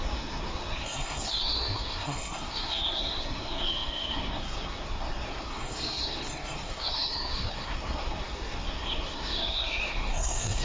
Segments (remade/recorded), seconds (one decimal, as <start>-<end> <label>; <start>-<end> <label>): 0.0-10.6 remade